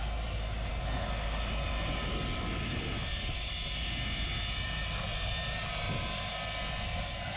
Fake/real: real